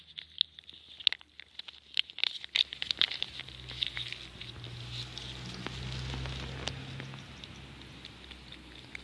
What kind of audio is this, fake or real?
real